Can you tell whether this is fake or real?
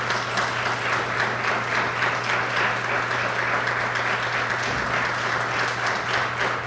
real